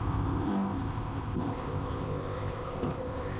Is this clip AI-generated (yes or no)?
yes